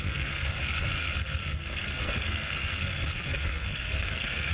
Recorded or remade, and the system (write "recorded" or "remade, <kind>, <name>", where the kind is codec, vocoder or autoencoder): remade, codec, SNAC